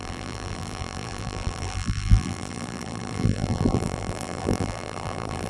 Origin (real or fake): fake